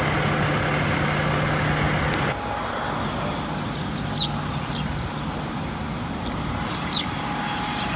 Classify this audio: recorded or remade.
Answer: recorded